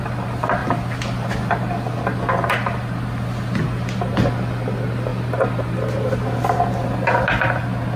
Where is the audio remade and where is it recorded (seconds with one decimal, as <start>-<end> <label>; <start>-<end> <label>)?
0.0-8.0 recorded